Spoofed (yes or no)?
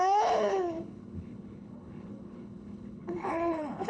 yes